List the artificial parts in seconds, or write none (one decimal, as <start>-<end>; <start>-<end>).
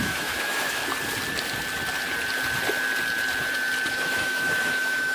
0.0-0.8; 3.9-5.1